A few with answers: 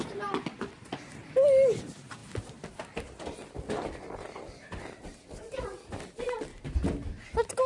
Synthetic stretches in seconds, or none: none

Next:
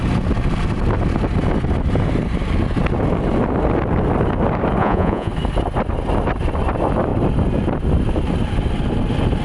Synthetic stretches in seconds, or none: 4.8-5.3 (vocoder, Vocos)

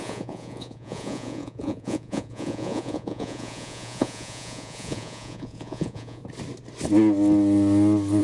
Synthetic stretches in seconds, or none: 0.0-6.2 (vocoder, Vocos)

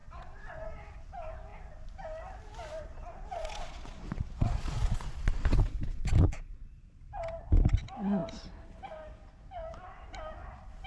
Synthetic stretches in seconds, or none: 0.0-0.8 (vocoder, Vocos); 2.9-6.8

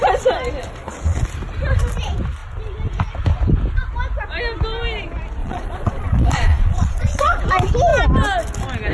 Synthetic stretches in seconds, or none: 0.6-1.2 (vocoder, Vocos); 5.4-7.4

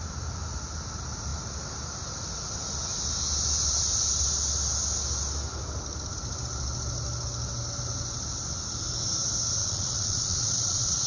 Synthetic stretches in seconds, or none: 9.6-11.1 (vocoder, Vocos)

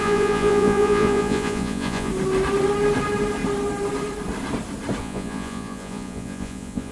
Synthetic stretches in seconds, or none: 0.0-2.1 (vocoder, Vocos); 5.0-6.9